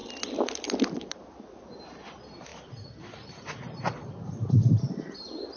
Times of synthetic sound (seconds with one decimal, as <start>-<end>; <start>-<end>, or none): 2.5-4.3

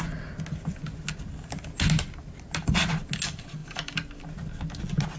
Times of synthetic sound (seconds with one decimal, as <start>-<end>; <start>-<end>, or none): none